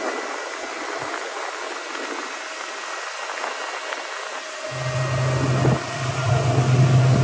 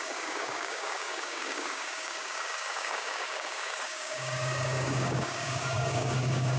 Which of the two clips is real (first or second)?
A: first